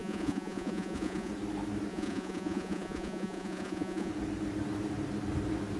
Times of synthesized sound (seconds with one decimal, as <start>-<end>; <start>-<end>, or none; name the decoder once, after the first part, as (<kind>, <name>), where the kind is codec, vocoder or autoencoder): 0.0-1.3 (vocoder, Vocos); 1.9-4.1